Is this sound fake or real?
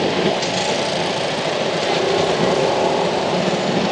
real